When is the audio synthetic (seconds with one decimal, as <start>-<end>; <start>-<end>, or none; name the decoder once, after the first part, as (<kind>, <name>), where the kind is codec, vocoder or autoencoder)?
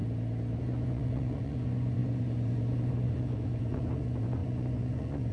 0.6-5.3 (vocoder, Vocos)